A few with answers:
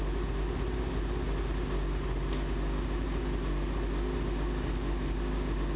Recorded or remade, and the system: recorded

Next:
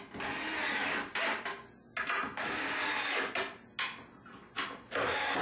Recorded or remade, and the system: recorded